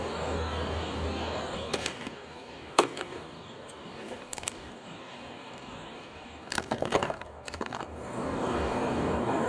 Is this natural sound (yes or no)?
no